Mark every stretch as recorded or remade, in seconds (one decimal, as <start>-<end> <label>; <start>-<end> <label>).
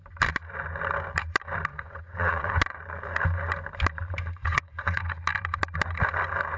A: 0.0-1.7 recorded; 1.7-2.5 remade; 2.5-4.4 recorded; 4.4-5.2 remade; 5.2-6.6 recorded